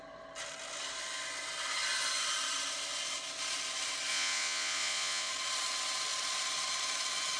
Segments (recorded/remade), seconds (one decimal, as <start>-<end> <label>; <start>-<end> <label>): 0.0-4.1 recorded; 4.1-5.3 remade; 5.3-7.4 recorded